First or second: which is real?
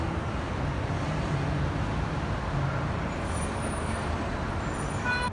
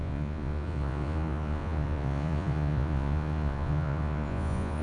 first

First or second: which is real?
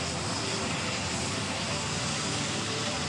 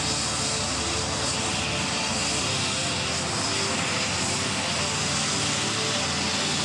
second